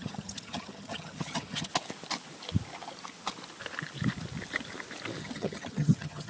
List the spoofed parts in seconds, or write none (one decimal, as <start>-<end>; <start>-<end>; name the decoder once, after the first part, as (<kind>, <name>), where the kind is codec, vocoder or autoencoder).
0.0-1.7 (vocoder, HiFi-GAN); 5.2-6.3